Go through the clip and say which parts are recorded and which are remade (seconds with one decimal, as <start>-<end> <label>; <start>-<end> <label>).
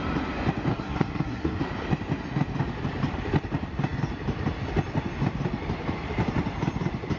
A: 0.0-0.7 recorded; 0.7-1.6 remade; 1.6-7.2 recorded